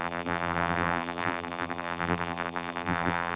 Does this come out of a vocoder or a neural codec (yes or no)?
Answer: yes